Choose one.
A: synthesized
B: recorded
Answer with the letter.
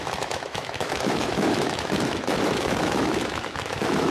A